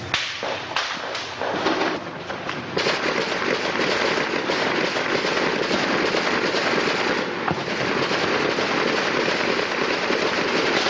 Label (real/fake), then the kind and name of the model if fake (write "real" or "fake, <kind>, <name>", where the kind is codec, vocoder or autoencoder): real